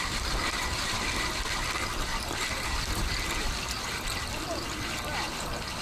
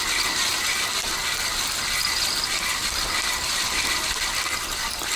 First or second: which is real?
second